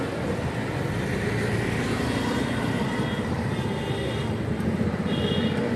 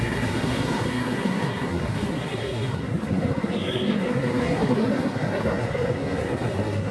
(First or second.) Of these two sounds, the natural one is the first